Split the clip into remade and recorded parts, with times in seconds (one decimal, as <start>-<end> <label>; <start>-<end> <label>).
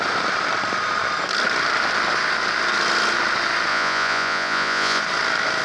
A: 0.0-3.7 recorded; 3.7-5.0 remade; 5.0-5.6 recorded